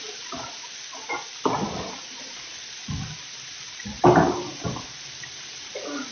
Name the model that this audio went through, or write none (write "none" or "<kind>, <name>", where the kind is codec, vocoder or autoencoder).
none